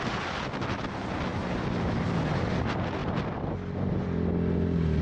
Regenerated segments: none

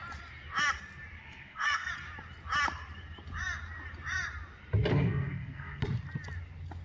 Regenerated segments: 1.2-1.9 (codec, SNAC); 4.9-5.8

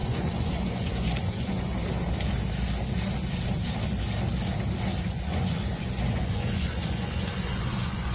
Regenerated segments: 0.0-1.7 (vocoder, Vocos); 5.1-8.1

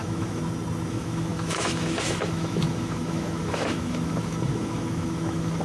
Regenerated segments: 0.0-0.4 (autoencoder, DAC-VAE); 0.9-5.6

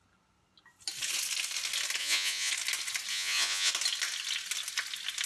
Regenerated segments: 2.0-2.5 (vocoder, Vocos); 3.1-3.7

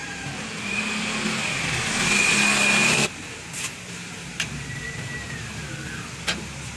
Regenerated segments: 0.0-0.8 (vocoder, BigVGAN v2); 2.8-5.5